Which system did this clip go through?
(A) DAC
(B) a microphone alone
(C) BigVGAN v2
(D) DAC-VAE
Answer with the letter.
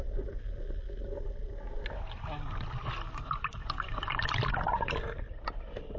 B